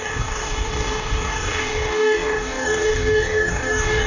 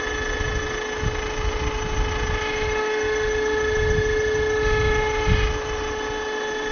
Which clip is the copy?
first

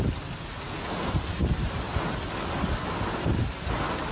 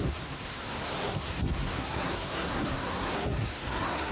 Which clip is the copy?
second